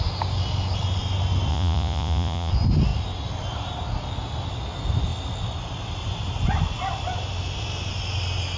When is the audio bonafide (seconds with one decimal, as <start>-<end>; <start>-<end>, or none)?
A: 0.0-1.5; 2.5-8.6

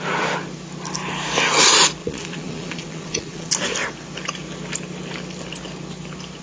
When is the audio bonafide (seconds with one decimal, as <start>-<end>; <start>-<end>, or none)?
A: 0.0-2.0; 3.5-6.4